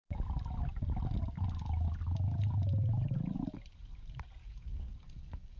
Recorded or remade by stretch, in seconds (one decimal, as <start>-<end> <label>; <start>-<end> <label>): 0.0-4.4 recorded; 4.4-5.6 remade

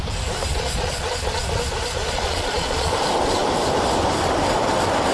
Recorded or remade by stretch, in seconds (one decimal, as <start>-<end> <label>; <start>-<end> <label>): 0.0-0.5 recorded; 0.5-1.5 remade; 1.5-2.0 recorded; 2.0-2.9 remade; 2.9-5.1 recorded

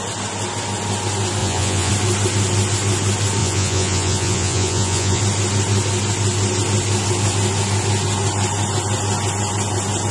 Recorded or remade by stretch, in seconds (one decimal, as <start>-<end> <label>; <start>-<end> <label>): 0.0-1.4 recorded; 1.4-1.9 remade; 1.9-3.4 recorded; 3.4-5.2 remade; 5.2-10.1 recorded

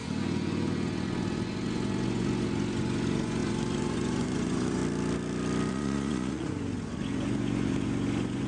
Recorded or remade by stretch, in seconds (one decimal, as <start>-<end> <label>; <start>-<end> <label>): 0.0-4.8 remade; 4.8-5.7 recorded; 5.7-8.5 remade

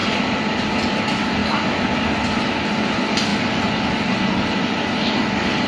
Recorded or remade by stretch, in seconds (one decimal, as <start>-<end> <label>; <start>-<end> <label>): 0.0-5.7 recorded

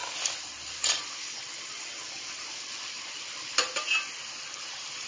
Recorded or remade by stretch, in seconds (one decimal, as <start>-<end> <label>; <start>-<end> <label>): 0.0-5.1 recorded

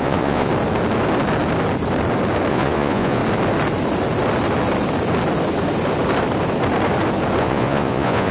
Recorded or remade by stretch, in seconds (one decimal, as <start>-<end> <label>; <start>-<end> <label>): 0.0-0.5 remade; 0.5-2.5 recorded; 2.5-3.2 remade; 3.2-7.4 recorded; 7.4-8.3 remade